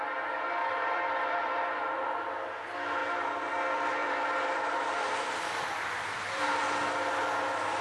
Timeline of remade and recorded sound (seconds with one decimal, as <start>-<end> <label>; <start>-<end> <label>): 0.0-0.6 recorded; 0.6-2.1 remade; 2.1-4.0 recorded; 4.0-6.7 remade; 6.7-7.8 recorded